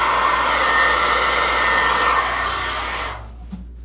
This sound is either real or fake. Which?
real